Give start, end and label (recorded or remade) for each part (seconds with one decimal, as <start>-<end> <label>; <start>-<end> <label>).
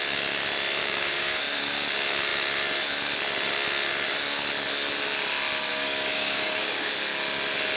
0.0-0.8 recorded; 0.8-1.4 remade; 1.4-5.7 recorded; 5.7-6.9 remade; 6.9-7.8 recorded